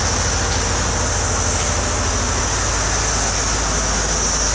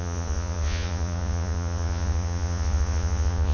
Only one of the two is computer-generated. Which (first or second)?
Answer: second